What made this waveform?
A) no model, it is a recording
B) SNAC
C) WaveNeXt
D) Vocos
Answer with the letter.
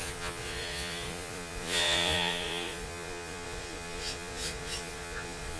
D